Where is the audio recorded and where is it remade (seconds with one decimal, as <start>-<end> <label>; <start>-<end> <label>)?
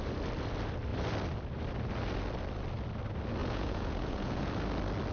0.0-3.4 recorded; 3.4-4.5 remade; 4.5-5.1 recorded